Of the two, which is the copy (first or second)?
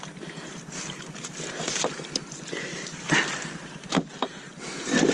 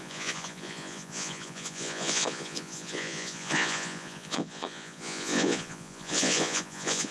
second